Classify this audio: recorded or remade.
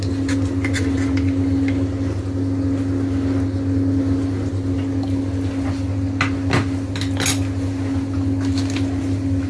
recorded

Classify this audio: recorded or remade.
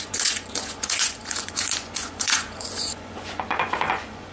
remade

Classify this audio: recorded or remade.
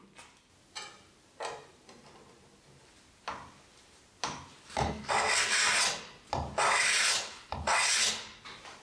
recorded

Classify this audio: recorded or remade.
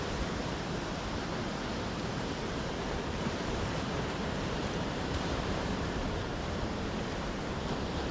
remade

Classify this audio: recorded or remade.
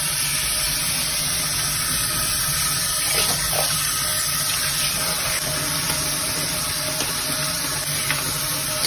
recorded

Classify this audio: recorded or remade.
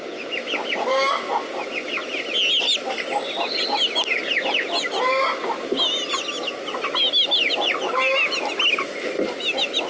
recorded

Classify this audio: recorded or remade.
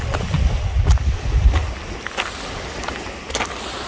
recorded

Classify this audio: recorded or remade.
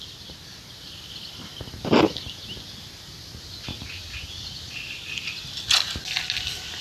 recorded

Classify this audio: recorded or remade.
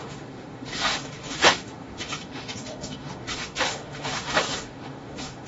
remade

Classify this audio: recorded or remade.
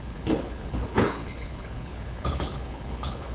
remade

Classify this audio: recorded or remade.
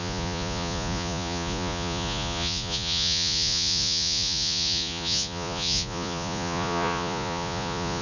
remade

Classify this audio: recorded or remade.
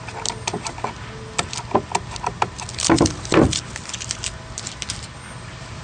recorded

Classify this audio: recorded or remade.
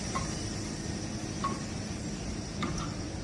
recorded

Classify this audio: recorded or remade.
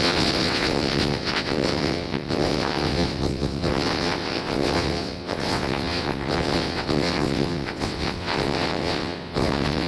remade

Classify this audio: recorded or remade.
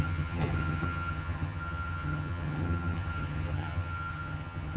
remade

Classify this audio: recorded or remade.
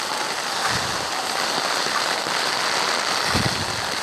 recorded